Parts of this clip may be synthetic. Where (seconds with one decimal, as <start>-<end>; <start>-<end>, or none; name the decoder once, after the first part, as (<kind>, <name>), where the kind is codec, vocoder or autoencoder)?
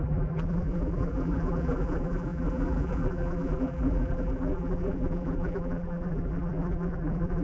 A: 0.0-7.4 (vocoder, BigVGAN v2)